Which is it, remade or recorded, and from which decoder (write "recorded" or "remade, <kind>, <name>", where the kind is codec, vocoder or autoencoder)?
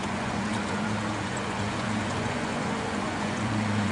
remade, vocoder, Vocos